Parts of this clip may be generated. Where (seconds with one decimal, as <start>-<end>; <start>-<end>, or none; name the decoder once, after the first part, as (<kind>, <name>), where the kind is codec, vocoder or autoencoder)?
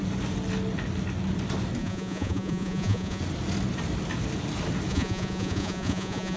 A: 1.8-3.2 (vocoder, Vocos); 4.9-6.4